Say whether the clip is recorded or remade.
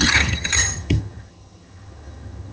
remade